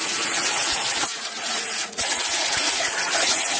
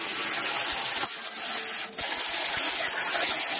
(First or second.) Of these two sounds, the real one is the second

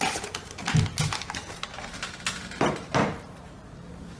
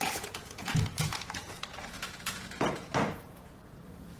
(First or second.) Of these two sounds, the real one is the first